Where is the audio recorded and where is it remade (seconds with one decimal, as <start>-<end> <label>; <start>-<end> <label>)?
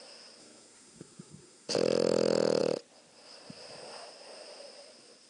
0.0-0.4 recorded; 0.4-1.7 remade; 1.7-5.3 recorded